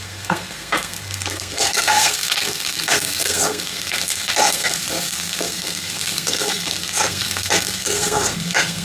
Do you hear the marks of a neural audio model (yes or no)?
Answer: yes